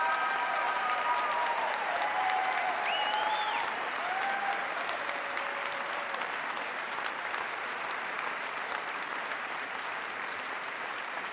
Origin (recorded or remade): remade